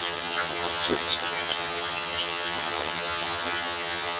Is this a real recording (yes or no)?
no